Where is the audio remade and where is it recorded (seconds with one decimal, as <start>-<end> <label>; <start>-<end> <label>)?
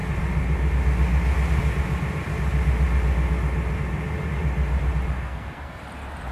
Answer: 0.0-5.2 recorded; 5.2-5.8 remade; 5.8-6.3 recorded